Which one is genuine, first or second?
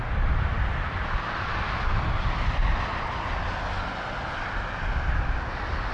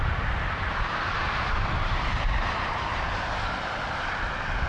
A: first